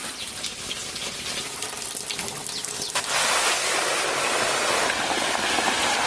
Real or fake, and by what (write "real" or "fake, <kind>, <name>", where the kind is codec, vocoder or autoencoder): real